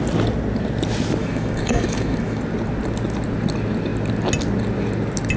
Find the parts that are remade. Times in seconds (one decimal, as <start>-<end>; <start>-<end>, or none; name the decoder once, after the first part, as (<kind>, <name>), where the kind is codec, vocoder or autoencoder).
1.2-2.4 (autoencoder, DAC-VAE)

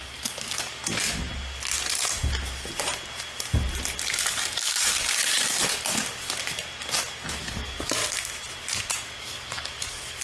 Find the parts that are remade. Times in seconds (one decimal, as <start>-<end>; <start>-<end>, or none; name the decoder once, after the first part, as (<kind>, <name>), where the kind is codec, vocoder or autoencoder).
0.0-0.8 (codec, DAC); 4.3-5.6; 7.4-8.0; 9.2-10.2